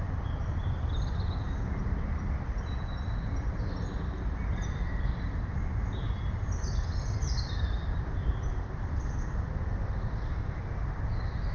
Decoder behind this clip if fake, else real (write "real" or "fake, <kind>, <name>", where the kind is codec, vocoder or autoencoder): real